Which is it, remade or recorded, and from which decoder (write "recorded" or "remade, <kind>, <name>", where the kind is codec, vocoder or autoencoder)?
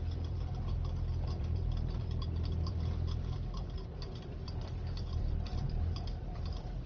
remade, vocoder, BigVGAN v2